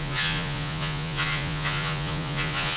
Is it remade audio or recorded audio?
remade